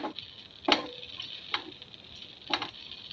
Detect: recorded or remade recorded